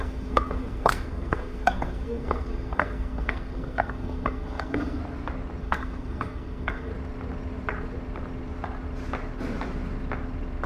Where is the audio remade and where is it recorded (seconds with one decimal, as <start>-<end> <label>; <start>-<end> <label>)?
0.0-5.0 remade; 5.0-5.6 recorded; 5.6-6.9 remade; 6.9-10.7 recorded